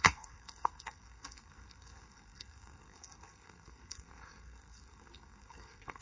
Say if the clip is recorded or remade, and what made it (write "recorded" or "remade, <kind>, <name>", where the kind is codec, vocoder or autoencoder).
remade, codec, SNAC